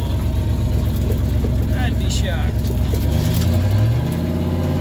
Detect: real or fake real